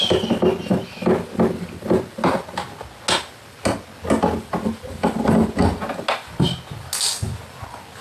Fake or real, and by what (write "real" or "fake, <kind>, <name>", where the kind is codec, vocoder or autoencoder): real